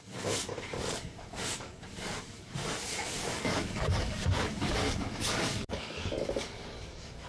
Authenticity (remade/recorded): remade